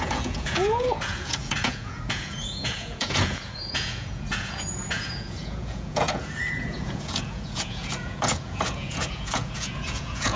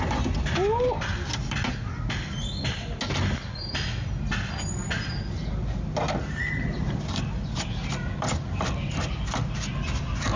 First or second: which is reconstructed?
first